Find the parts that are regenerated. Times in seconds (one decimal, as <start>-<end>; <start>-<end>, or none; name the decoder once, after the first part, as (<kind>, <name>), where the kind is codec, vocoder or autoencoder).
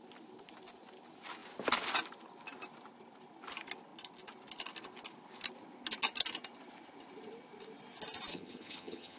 8.3-9.2 (vocoder, HiFi-GAN)